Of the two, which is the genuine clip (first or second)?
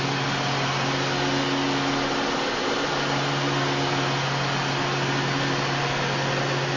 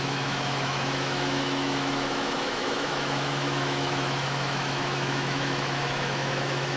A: first